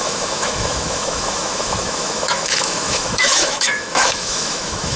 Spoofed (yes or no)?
yes